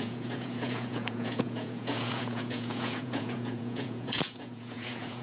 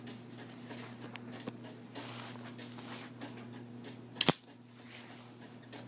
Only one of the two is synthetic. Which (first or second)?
first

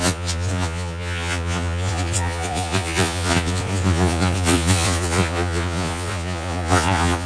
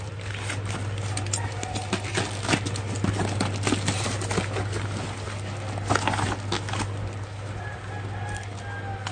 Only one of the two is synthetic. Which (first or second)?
first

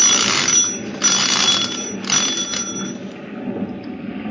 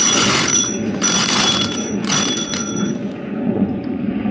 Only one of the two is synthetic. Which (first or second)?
second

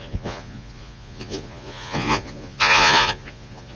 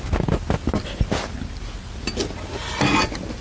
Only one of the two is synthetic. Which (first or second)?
first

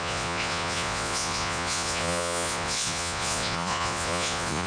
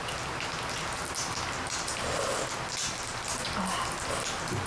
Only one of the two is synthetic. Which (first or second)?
first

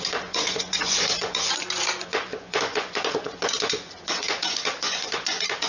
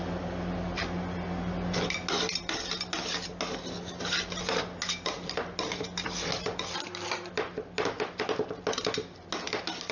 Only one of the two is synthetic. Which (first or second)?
first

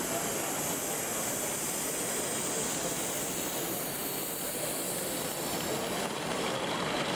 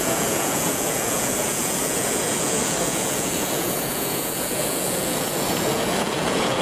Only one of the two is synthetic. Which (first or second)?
second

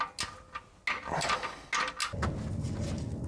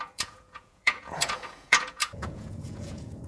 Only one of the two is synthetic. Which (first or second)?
second